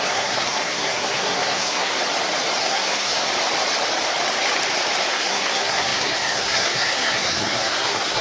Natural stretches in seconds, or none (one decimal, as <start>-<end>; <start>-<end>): 1.9-2.6; 3.3-5.1